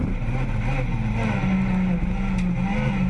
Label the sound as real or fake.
real